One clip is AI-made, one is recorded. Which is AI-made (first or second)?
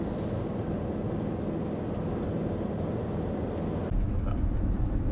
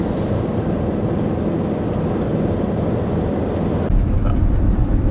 second